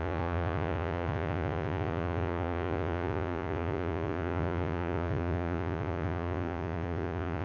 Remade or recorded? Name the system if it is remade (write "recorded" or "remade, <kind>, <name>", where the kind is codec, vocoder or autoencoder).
remade, vocoder, Vocos